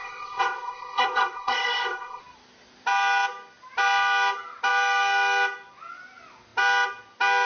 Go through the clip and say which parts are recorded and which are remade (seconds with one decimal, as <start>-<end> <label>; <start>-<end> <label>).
0.0-2.2 remade; 2.2-7.5 recorded

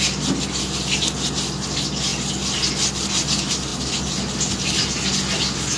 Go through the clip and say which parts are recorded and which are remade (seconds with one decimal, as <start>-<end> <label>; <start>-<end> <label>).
0.0-5.8 recorded

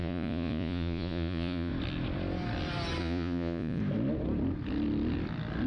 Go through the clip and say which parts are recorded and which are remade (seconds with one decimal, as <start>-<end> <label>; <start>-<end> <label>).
0.0-1.7 remade; 1.7-3.0 recorded; 3.0-3.8 remade; 3.8-5.7 recorded

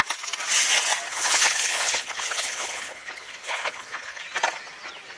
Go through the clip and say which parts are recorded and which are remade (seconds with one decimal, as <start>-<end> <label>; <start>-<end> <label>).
0.0-1.1 recorded; 1.1-4.2 remade; 4.2-5.2 recorded

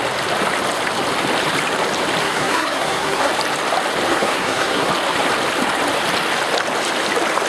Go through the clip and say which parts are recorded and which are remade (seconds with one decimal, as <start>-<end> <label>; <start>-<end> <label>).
0.0-2.2 recorded; 2.2-3.3 remade; 3.3-4.1 recorded; 4.1-4.9 remade; 4.9-7.5 recorded